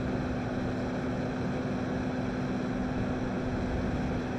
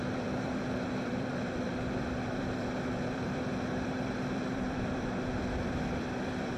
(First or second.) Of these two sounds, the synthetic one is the second